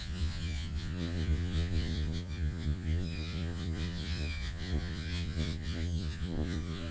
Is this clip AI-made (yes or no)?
yes